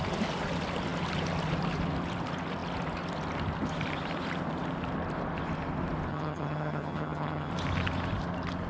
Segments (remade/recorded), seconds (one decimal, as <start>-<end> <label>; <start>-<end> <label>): 0.0-6.1 recorded; 6.1-7.5 remade; 7.5-8.7 recorded